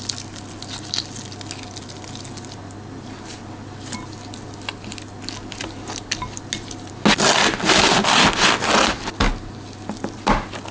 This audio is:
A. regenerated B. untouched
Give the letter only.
B